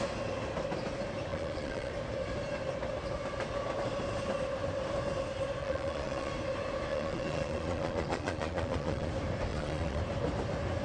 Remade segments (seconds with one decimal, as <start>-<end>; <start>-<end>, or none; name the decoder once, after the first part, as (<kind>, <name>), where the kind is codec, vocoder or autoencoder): 1.3-1.9 (vocoder, Vocos); 5.6-6.3; 6.9-9.1; 9.5-10.0